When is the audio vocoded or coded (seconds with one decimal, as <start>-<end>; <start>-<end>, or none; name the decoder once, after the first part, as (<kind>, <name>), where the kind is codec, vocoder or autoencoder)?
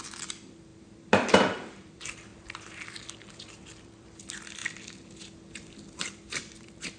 0.0-4.6 (vocoder, BigVGAN v2); 6.0-7.0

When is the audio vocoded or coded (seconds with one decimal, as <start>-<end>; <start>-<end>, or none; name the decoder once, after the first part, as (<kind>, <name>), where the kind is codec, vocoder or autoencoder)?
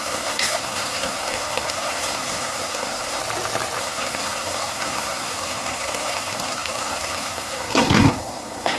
0.0-3.2 (codec, SNAC); 3.8-8.8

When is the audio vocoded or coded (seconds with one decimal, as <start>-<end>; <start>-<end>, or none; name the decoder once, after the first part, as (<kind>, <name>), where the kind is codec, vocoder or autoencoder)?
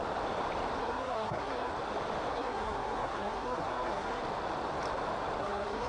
0.8-1.7 (codec, SNAC); 2.3-4.2; 5.4-5.9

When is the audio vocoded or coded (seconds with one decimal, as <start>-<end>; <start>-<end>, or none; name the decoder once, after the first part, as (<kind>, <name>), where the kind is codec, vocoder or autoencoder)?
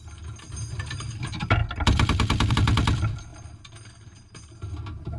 none